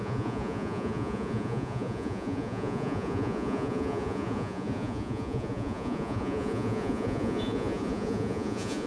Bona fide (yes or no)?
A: no